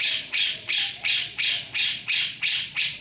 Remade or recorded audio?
remade